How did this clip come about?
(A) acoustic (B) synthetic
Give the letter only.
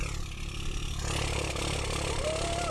A